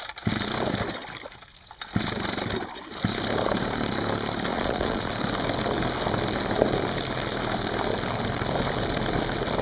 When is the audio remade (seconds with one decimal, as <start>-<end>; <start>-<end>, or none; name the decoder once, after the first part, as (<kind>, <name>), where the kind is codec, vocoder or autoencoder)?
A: 4.5-5.1 (vocoder, Vocos)